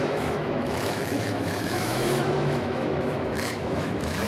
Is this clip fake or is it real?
fake